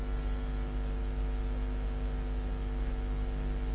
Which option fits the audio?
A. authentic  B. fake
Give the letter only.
A